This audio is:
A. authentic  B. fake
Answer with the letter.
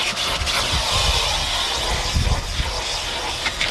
A